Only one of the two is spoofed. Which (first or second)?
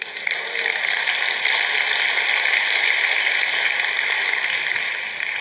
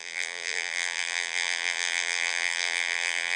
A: second